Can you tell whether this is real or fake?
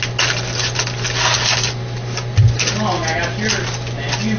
real